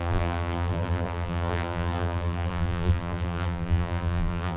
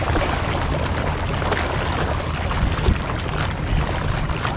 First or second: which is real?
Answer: second